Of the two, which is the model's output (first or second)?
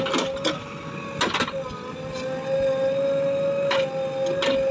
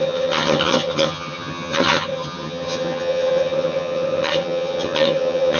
second